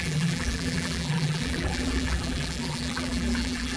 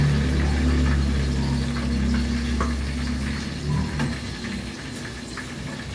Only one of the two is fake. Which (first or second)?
first